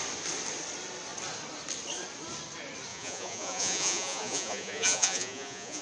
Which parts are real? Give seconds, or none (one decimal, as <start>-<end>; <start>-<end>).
0.0-2.9